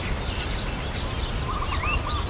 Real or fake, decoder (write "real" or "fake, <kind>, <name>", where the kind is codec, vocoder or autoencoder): real